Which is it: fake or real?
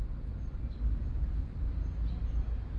real